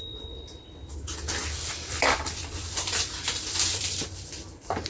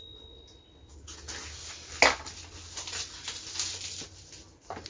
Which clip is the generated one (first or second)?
first